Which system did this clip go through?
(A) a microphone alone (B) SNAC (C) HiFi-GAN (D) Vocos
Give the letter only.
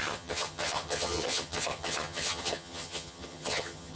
C